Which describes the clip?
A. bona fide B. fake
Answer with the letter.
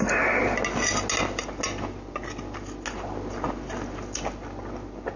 A